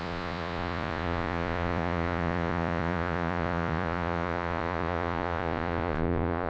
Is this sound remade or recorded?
remade